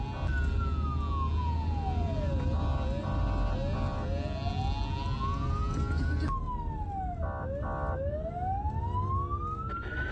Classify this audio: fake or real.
real